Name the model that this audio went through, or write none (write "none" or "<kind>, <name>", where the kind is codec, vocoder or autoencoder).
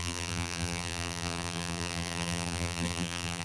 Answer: vocoder, BigVGAN v2